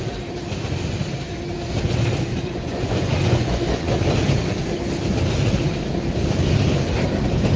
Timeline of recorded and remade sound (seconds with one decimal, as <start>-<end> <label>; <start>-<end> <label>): 0.0-2.3 recorded; 2.3-4.0 remade; 4.0-7.6 recorded